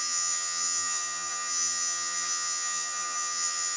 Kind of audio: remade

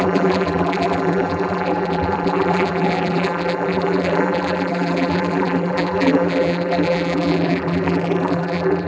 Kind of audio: remade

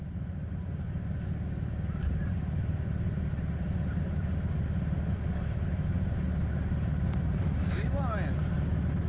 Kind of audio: recorded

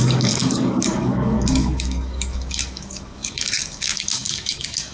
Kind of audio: remade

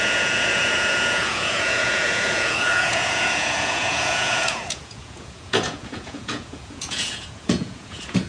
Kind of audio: remade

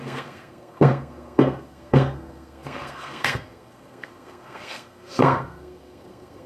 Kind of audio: remade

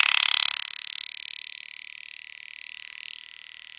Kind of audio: recorded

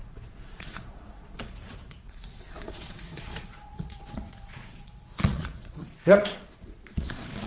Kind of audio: remade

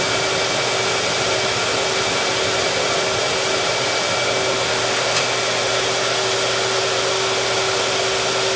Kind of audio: recorded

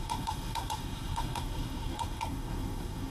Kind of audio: remade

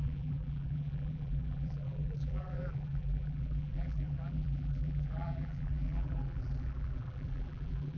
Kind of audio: remade